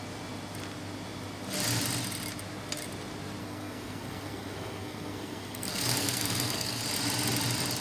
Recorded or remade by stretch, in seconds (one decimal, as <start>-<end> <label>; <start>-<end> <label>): 0.0-3.4 recorded; 3.4-6.8 remade; 6.8-7.8 recorded

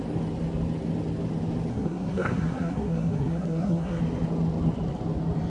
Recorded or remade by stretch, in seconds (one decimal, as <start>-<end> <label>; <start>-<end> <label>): 0.0-1.7 recorded; 1.7-4.0 remade; 4.0-5.5 recorded

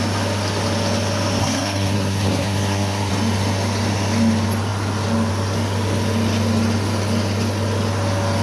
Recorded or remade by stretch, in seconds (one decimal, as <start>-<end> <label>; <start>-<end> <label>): 0.0-1.4 recorded; 1.4-3.1 remade; 3.1-8.4 recorded

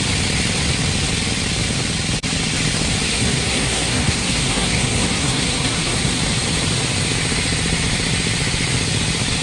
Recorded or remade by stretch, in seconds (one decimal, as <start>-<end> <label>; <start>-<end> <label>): 0.0-3.1 recorded; 3.1-6.2 remade; 6.2-9.4 recorded

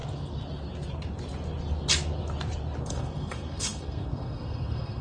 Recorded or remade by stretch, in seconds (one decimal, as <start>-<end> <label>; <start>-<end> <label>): 0.0-2.8 recorded; 2.8-5.0 remade

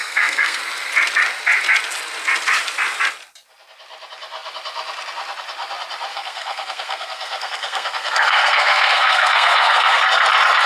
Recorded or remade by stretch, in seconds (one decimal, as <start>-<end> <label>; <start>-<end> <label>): 0.0-0.6 remade; 0.6-6.1 recorded; 6.1-10.0 remade; 10.0-10.7 recorded

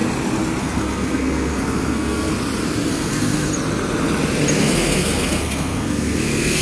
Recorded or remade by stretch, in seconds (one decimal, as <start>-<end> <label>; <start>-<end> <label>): 0.0-0.6 recorded; 0.6-2.3 remade; 2.3-2.9 recorded; 2.9-3.5 remade; 3.5-4.5 recorded; 4.5-6.6 remade

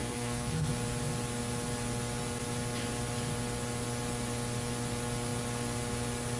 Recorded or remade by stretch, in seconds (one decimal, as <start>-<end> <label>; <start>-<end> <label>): 0.0-0.7 remade; 0.7-6.4 recorded